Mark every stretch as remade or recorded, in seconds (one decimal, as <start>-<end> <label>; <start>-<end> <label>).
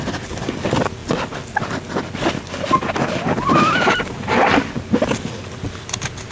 0.0-1.0 recorded; 1.0-1.6 remade; 1.6-6.3 recorded